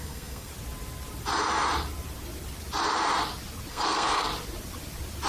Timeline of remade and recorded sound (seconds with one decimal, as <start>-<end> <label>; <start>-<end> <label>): 0.0-0.5 remade; 0.5-3.7 recorded; 3.7-4.3 remade; 4.3-5.3 recorded